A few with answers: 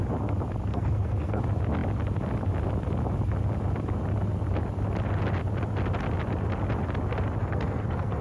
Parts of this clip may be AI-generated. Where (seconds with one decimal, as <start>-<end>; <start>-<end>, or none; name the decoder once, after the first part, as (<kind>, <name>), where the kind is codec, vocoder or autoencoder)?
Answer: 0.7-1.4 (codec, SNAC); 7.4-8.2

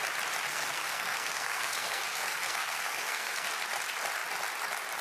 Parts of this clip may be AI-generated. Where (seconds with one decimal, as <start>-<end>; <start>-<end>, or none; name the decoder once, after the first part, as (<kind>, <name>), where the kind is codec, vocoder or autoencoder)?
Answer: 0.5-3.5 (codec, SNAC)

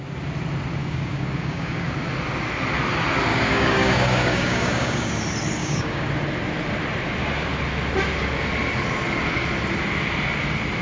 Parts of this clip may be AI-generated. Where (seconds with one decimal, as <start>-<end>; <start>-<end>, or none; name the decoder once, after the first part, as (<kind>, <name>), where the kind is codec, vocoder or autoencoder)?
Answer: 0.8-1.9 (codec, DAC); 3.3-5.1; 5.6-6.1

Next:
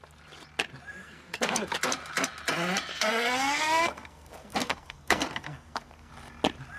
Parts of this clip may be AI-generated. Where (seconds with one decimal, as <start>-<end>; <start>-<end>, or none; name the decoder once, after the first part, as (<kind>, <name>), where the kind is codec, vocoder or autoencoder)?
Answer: 1.0-1.7 (codec, SNAC); 2.9-6.1

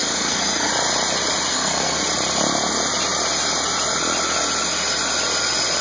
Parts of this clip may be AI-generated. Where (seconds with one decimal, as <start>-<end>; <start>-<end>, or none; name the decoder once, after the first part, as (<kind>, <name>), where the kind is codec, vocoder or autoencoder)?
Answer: 0.0-0.7 (codec, SNAC); 1.5-2.0